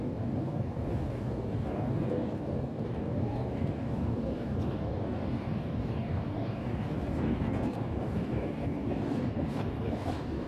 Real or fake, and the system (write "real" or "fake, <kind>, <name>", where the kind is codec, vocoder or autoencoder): fake, codec, DAC